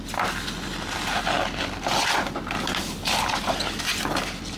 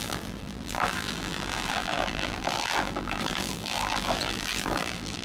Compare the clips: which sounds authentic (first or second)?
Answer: first